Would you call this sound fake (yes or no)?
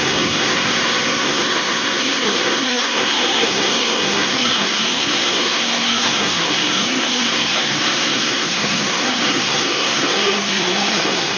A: yes